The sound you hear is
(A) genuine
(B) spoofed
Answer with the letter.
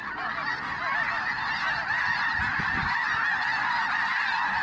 A